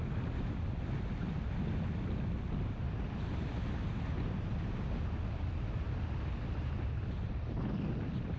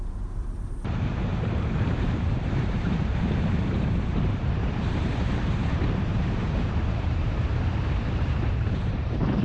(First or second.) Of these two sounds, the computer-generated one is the second